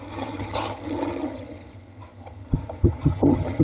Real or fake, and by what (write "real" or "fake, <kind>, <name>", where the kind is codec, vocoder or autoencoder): fake, vocoder, HiFi-GAN